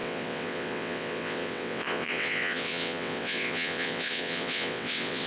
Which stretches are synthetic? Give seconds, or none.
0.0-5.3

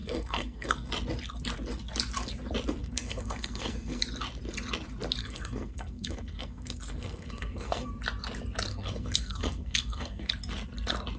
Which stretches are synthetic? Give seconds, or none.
0.0-0.9; 2.8-4.0; 5.2-7.9; 8.7-10.3